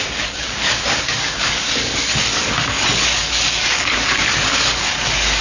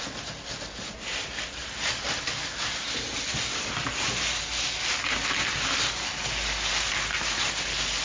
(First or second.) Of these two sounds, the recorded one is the second